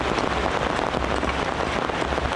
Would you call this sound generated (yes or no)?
no